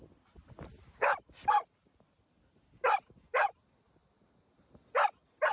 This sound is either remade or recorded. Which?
recorded